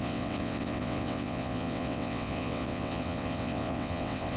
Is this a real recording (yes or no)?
no